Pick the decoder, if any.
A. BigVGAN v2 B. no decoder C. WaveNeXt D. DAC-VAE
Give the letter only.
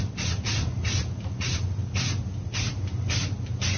B